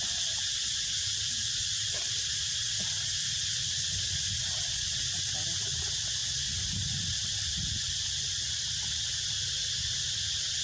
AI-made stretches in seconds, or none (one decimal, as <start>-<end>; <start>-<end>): none